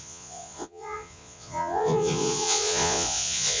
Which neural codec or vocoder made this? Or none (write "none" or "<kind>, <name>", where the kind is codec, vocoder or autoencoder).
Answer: vocoder, Vocos